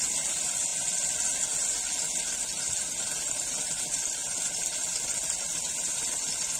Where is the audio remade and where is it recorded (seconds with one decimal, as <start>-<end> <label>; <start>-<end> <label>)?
0.0-6.6 recorded